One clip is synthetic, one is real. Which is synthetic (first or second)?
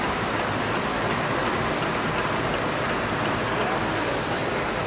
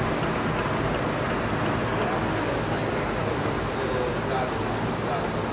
first